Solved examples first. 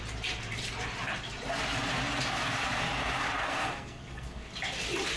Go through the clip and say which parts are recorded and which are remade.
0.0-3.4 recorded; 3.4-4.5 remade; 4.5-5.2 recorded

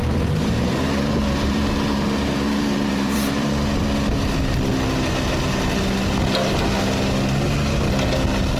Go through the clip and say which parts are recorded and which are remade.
0.0-3.5 remade; 3.5-8.6 recorded

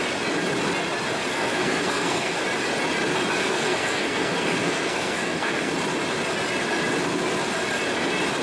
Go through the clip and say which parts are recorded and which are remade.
0.0-1.3 recorded; 1.3-2.4 remade; 2.4-3.4 recorded; 3.4-5.7 remade; 5.7-8.4 recorded

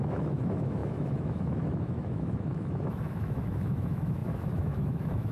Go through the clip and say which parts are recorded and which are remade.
0.0-5.3 remade

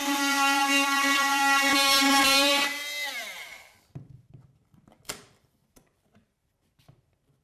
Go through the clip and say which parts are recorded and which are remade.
0.0-7.4 remade